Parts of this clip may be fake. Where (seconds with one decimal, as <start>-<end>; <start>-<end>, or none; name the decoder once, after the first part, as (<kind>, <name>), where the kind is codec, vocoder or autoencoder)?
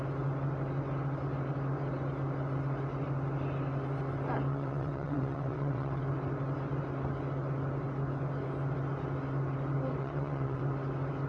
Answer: 4.5-6.0 (vocoder, WaveNeXt); 10.0-10.6